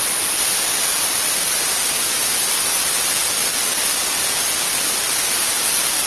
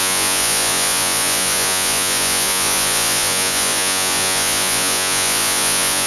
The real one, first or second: first